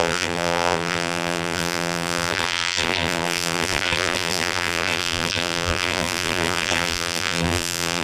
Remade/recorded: remade